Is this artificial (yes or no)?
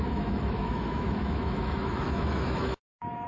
yes